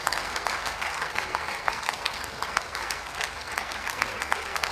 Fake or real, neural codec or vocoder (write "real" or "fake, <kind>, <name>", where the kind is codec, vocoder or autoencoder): fake, codec, SNAC